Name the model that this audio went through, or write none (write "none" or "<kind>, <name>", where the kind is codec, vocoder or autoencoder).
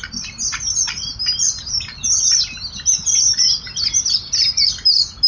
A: none